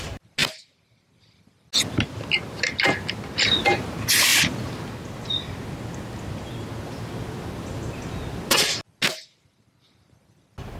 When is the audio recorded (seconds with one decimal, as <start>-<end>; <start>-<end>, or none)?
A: 0.0-10.8